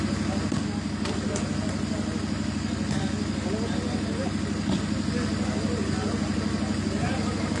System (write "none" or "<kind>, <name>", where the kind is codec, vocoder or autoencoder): none